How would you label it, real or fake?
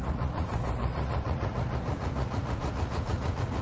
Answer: fake